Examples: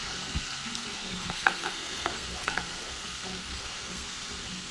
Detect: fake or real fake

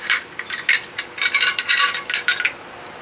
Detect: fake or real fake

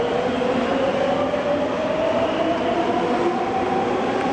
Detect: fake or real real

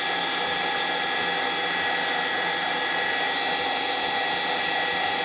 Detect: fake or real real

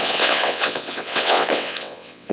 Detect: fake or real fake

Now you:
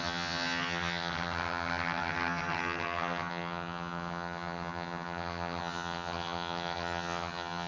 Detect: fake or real fake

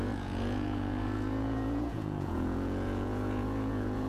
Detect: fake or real fake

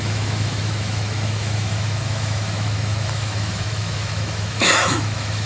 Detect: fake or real fake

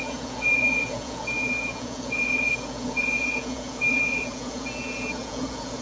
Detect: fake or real fake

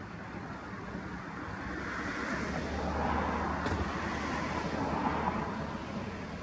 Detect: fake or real real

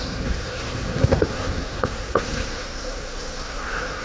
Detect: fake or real fake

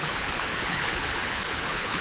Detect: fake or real fake